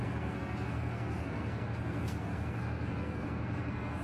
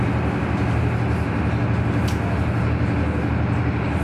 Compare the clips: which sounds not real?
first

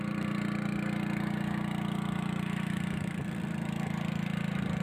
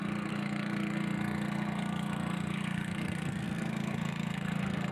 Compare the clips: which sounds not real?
second